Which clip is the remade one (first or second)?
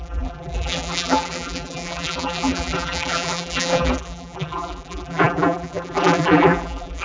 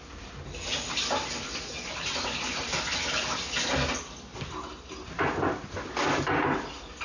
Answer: first